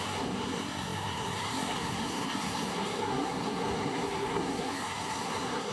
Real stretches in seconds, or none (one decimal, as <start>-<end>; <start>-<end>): none